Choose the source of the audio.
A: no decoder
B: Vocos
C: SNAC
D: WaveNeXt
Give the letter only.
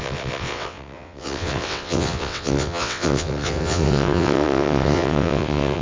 D